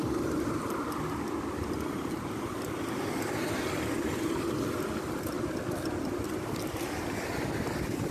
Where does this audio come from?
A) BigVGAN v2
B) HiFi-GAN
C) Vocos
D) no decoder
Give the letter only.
D